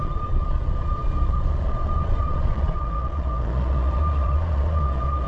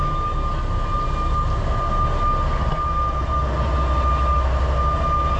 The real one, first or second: second